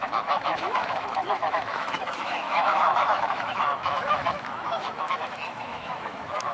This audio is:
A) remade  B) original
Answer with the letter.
A